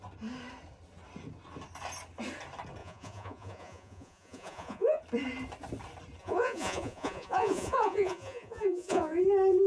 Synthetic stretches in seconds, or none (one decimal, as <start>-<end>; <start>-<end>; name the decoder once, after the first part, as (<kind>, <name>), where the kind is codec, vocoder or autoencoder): 2.8-5.0 (vocoder, Vocos); 6.2-9.2